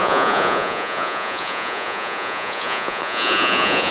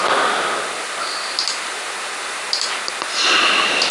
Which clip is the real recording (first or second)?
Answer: second